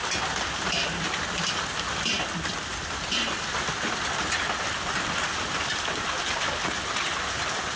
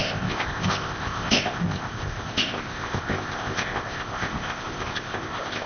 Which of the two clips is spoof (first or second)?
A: second